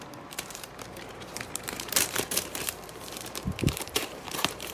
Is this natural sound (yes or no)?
no